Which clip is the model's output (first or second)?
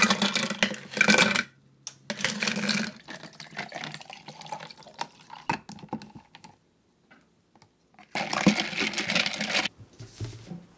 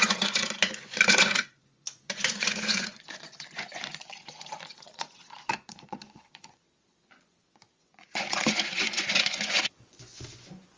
second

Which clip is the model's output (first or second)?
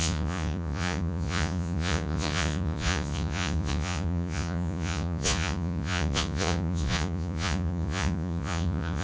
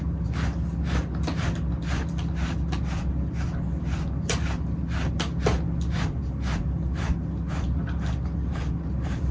first